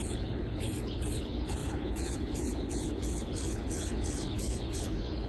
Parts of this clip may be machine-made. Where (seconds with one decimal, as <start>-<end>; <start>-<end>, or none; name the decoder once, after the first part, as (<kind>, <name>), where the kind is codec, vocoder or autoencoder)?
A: 0.0-5.3 (codec, HILCodec)